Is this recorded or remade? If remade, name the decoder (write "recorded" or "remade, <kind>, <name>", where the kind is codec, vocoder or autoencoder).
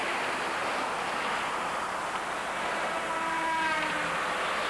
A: recorded